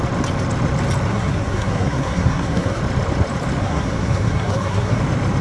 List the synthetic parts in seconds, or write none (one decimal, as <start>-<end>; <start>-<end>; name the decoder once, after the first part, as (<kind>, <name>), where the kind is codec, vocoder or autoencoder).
1.1-2.8 (codec, SNAC); 3.6-5.0